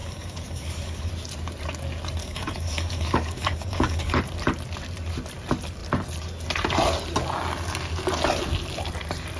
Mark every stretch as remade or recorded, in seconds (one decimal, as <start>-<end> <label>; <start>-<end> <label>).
0.0-1.1 remade; 1.1-2.2 recorded; 2.2-4.2 remade; 4.2-9.4 recorded